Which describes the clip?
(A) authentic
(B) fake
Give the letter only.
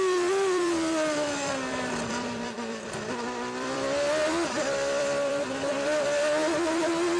B